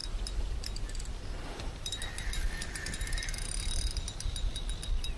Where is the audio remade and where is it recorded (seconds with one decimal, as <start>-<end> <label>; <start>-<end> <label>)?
0.0-5.2 recorded